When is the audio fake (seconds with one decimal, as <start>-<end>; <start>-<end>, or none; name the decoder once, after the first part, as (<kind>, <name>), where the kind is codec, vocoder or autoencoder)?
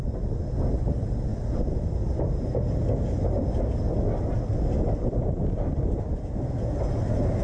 none